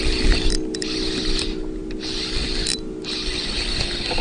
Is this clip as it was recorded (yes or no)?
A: yes